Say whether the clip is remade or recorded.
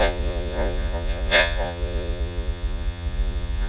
remade